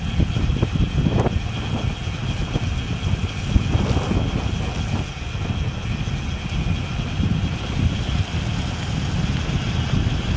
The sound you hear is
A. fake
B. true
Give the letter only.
B